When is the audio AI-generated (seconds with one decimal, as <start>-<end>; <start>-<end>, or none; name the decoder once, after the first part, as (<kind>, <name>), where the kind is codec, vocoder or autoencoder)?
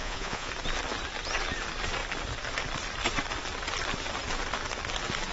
0.0-0.5 (vocoder, Vocos)